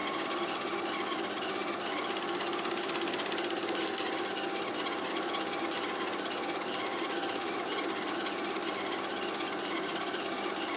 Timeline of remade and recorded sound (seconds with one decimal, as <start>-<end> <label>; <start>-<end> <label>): 0.0-0.9 remade; 0.9-10.8 recorded

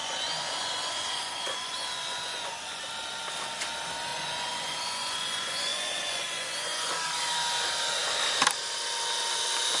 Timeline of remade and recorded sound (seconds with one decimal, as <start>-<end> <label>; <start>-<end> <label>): 0.0-2.8 remade; 2.8-4.1 recorded; 4.1-6.9 remade; 6.9-9.8 recorded